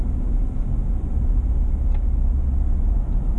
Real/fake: real